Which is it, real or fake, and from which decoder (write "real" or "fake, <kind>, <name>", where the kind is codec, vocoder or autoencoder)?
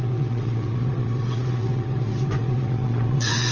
fake, vocoder, WaveNeXt